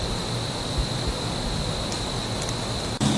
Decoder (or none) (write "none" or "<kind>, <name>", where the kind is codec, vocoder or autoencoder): none